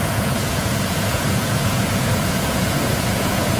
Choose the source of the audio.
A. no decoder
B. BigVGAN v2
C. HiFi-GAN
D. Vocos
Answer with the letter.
D